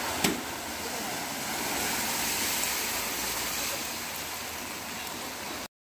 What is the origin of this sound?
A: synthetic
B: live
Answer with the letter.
B